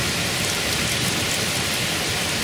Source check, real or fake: real